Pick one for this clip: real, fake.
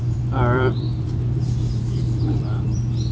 fake